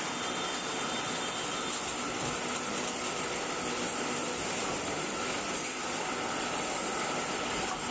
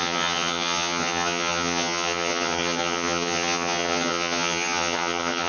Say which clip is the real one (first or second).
first